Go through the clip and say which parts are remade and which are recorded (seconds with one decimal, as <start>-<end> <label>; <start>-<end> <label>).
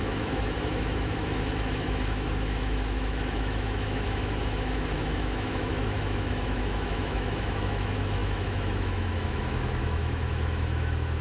0.0-11.2 remade